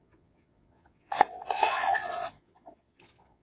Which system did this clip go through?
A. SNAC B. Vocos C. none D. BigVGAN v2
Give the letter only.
B